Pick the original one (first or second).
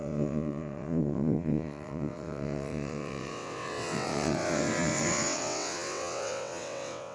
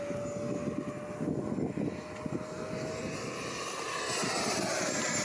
second